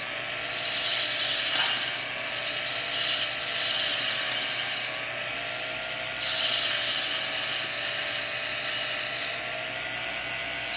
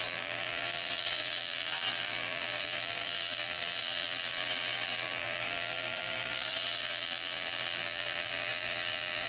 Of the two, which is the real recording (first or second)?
first